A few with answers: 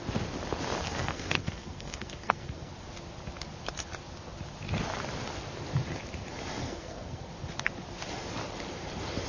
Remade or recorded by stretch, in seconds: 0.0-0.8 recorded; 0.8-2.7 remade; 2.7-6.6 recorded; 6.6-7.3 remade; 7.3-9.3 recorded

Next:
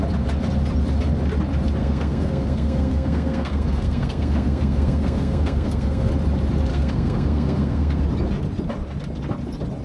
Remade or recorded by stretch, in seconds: 0.0-1.8 recorded; 1.8-6.1 remade; 6.1-6.7 recorded; 6.7-8.0 remade; 8.0-9.8 recorded

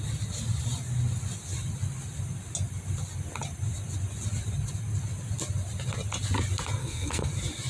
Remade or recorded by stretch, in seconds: 0.0-6.8 recorded; 6.8-7.3 remade; 7.3-7.7 recorded

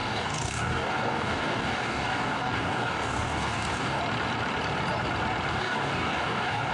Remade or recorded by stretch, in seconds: 0.0-4.0 remade; 4.0-5.5 recorded; 5.5-6.7 remade

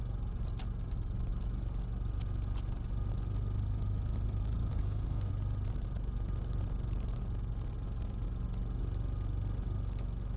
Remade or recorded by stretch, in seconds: 0.0-4.7 recorded; 4.7-5.3 remade; 5.3-10.4 recorded